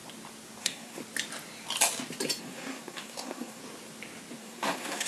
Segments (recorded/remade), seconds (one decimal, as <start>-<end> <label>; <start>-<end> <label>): 0.0-0.6 recorded; 0.6-1.0 remade; 1.0-2.4 recorded; 2.4-3.6 remade; 3.6-4.4 recorded; 4.4-5.1 remade